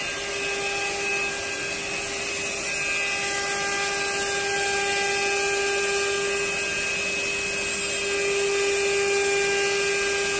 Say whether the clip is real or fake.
real